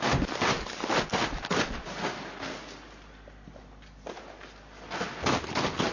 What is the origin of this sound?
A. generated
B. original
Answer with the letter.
B